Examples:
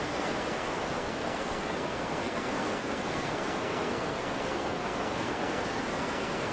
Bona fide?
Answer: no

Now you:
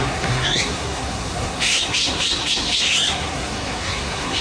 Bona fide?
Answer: no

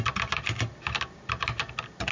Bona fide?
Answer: yes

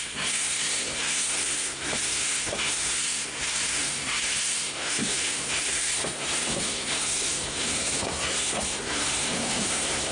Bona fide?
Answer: no